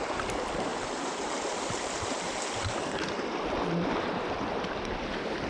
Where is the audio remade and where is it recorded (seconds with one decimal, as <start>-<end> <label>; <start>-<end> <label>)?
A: 0.0-5.5 remade